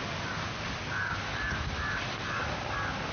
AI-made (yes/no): no